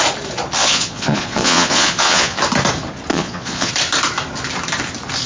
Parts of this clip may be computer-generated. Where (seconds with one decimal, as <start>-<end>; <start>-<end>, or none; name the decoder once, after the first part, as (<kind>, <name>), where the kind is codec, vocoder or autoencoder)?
0.6-2.4 (vocoder, Vocos); 3.1-3.7